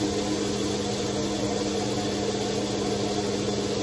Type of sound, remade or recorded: recorded